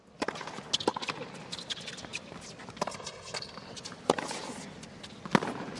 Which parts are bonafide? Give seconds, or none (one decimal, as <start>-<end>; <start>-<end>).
0.0-0.9; 1.4-5.8